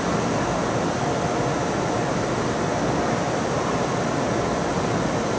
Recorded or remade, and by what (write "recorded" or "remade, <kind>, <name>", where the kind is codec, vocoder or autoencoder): recorded